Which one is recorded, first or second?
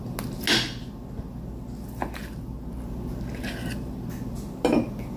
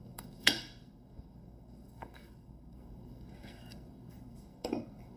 first